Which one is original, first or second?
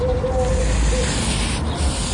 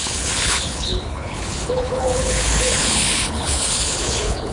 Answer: first